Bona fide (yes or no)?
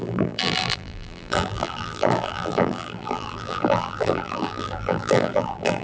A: no